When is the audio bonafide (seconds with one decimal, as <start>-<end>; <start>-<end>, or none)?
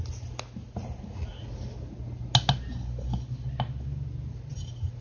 0.0-5.0